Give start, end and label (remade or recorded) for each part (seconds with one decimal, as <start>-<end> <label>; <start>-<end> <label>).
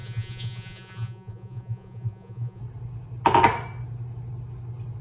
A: 0.0-2.6 remade; 2.6-5.0 recorded